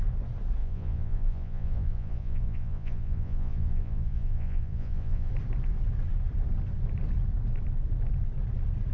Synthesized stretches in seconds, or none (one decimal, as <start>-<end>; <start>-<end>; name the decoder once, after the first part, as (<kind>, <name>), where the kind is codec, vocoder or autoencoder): 0.6-5.3 (vocoder, Vocos)